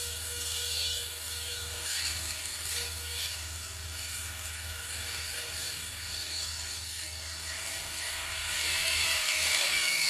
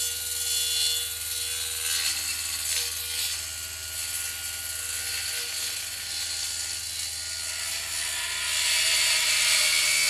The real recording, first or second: second